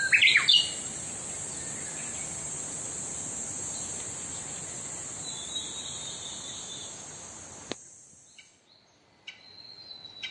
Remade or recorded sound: recorded